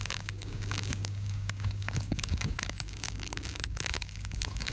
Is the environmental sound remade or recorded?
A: remade